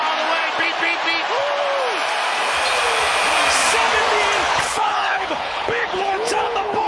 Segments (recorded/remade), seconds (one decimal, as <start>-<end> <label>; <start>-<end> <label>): 0.0-4.5 recorded; 4.5-6.9 remade